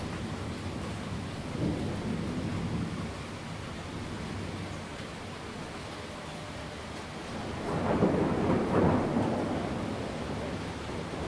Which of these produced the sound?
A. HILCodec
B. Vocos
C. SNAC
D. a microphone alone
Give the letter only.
D